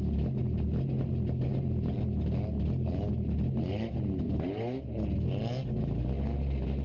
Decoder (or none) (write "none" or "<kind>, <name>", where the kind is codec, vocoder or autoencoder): none